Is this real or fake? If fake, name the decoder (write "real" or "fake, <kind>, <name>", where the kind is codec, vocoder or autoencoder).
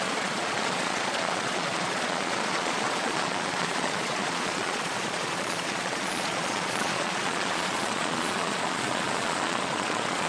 fake, vocoder, Vocos